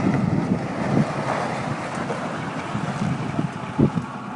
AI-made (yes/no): no